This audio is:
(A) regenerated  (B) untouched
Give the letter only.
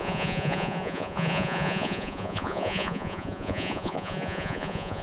A